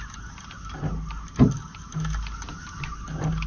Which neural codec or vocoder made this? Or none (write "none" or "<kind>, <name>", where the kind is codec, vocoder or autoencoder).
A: none